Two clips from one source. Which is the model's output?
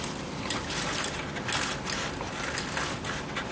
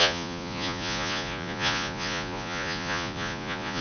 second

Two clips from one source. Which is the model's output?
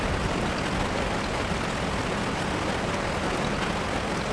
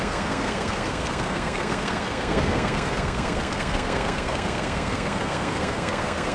second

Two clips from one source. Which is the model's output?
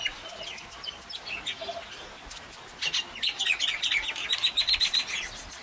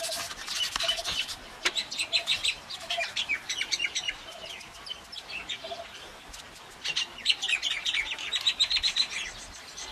second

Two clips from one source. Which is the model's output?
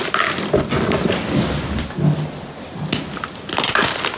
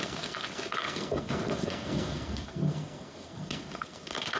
second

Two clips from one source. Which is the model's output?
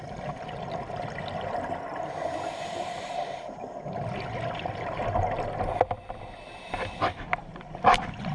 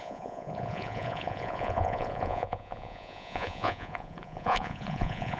second